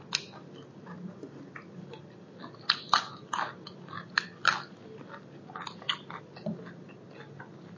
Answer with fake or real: real